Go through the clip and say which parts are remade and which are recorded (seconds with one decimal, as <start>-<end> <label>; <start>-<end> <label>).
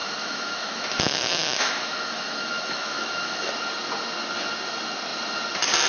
0.0-3.5 remade; 3.5-5.9 recorded